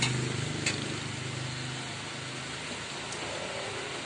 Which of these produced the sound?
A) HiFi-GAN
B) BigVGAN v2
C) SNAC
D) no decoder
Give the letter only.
D